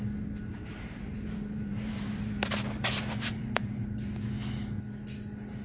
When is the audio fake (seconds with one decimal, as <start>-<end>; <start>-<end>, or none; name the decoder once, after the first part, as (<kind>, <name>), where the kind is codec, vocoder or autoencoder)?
0.7-4.1 (vocoder, BigVGAN v2)

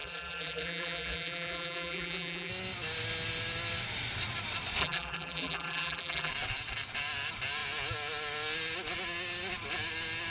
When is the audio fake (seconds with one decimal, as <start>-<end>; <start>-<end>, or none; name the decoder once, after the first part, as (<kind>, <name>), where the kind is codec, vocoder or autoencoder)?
0.0-2.5 (vocoder, BigVGAN v2); 4.8-6.3

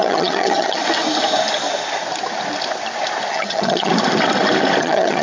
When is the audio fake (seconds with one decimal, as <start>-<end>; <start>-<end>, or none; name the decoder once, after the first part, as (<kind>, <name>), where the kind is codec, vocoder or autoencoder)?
0.0-0.8 (vocoder, HiFi-GAN); 3.3-3.9; 4.8-5.2